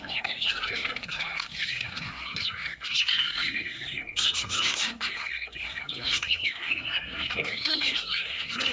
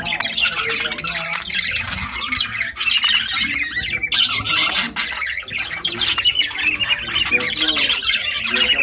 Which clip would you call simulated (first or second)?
first